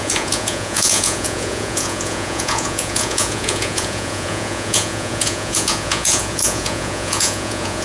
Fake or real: fake